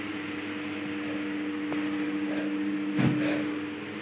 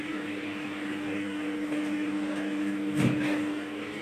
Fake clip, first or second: second